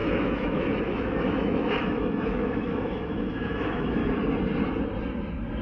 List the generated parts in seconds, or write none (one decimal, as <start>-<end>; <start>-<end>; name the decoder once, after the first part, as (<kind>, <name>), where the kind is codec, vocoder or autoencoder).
0.0-4.0 (autoencoder, DAC-VAE)